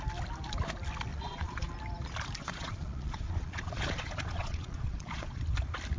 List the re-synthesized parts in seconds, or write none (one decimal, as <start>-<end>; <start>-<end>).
1.1-1.7; 2.4-5.4